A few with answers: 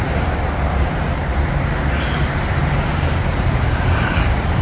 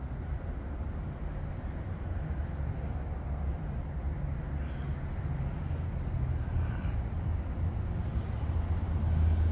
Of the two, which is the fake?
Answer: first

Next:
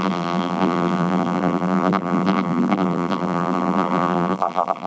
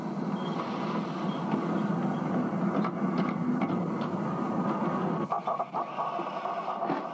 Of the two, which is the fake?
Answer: first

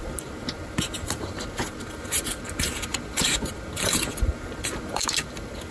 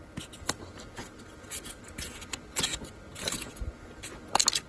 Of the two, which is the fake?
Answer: first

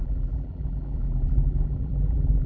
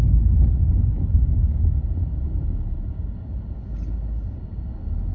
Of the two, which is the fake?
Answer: first